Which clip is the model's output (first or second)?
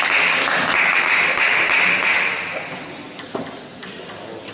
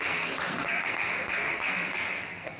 second